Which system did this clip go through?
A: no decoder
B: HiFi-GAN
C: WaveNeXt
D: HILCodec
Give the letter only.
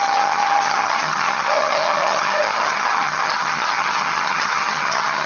B